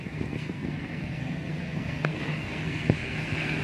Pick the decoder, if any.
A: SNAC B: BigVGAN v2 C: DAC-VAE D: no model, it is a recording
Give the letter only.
A